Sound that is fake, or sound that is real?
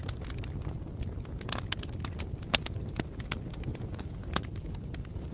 real